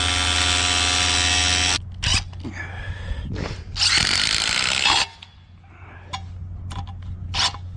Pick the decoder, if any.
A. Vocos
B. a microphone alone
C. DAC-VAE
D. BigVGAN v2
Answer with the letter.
B